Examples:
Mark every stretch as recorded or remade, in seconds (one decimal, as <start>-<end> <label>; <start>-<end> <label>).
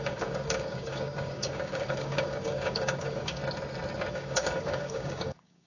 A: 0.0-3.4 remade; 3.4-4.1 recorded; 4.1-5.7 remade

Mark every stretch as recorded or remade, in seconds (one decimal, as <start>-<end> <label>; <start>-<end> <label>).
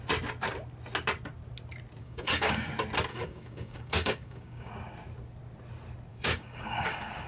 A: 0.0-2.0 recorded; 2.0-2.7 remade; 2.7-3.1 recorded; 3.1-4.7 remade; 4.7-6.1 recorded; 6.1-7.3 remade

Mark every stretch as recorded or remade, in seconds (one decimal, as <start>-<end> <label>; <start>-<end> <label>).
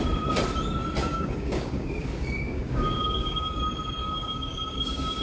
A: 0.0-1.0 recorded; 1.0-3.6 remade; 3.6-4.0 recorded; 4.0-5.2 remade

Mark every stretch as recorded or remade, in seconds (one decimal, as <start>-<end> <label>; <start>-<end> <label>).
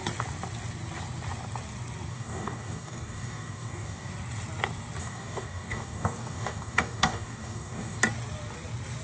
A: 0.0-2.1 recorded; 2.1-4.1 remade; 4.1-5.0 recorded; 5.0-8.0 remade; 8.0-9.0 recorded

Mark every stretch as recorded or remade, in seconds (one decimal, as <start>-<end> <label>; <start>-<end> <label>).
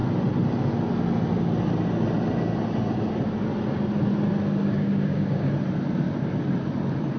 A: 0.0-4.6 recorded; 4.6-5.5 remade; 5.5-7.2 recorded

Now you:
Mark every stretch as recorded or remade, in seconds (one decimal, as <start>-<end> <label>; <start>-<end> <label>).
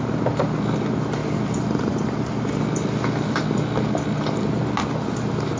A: 0.0-5.6 recorded